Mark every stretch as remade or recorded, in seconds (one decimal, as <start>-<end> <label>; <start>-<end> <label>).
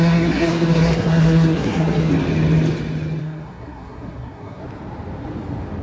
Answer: 0.0-2.1 remade; 2.1-3.2 recorded; 3.2-4.6 remade; 4.6-5.8 recorded